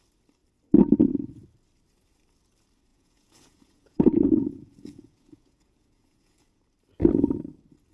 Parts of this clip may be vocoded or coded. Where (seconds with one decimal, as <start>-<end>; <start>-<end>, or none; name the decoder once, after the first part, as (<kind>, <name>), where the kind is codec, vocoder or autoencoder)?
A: 2.9-6.6 (vocoder, Vocos)